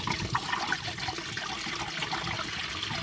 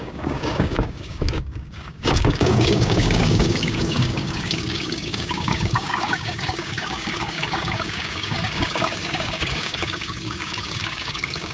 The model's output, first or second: second